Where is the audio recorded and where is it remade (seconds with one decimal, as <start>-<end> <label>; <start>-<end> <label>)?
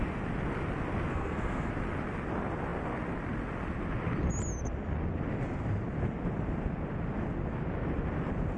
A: 0.0-1.1 recorded; 1.1-1.7 remade; 1.7-8.6 recorded